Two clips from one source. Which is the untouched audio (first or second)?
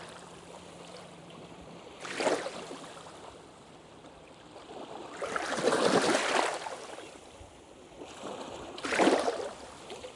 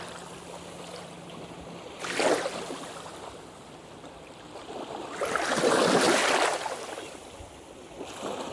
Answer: second